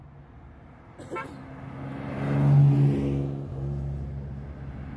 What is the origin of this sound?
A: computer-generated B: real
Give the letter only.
B